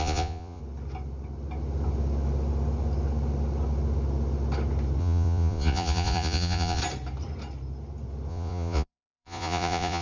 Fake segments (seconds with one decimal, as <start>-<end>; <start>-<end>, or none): 0.0-0.6; 5.0-6.8; 8.3-10.0